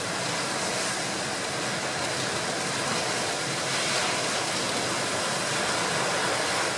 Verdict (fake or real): real